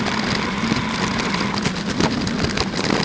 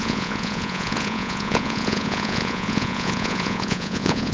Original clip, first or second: first